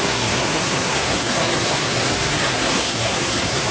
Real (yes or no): no